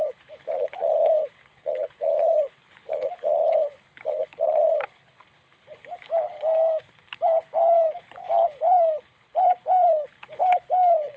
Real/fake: fake